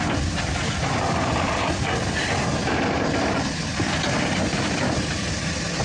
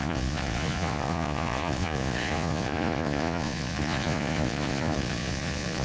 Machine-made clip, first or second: second